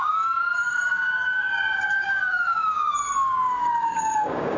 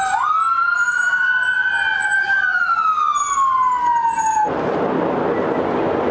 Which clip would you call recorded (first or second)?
second